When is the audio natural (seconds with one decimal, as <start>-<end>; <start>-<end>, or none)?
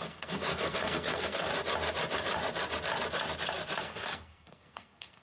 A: 1.5-3.8